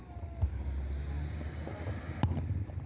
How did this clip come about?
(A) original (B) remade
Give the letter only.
A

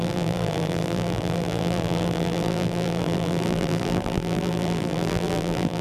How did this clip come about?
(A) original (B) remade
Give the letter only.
B